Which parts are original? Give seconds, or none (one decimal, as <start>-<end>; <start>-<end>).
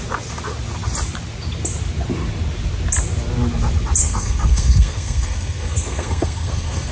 0.0-4.0